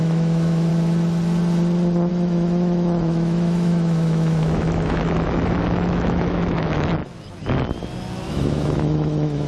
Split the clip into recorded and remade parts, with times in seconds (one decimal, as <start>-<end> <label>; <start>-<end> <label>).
0.0-0.7 remade; 0.7-2.1 recorded; 2.1-7.0 remade; 7.0-8.3 recorded; 8.3-9.5 remade